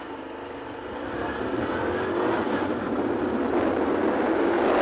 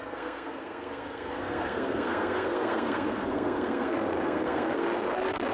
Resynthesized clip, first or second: second